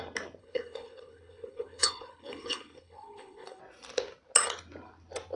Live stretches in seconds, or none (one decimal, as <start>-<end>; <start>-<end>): 0.0-0.4; 3.6-5.4